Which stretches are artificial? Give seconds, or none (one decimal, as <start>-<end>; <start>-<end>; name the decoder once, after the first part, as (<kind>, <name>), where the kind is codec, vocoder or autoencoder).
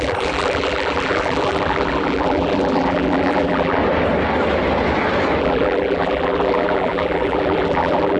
0.0-3.8 (vocoder, BigVGAN v2); 5.4-8.2